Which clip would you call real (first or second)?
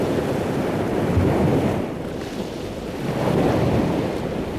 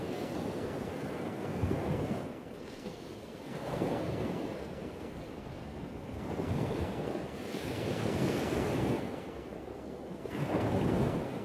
first